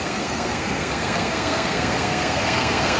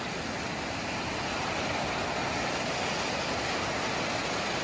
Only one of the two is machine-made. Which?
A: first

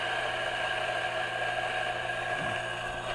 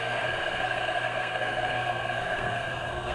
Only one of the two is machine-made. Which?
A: second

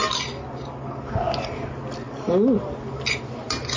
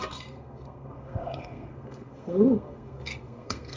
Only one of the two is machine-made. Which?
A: second